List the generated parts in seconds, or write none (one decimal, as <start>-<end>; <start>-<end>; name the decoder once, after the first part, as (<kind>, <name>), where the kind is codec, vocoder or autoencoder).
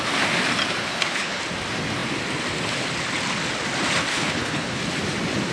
0.8-1.4 (codec, HILCodec); 4.1-4.8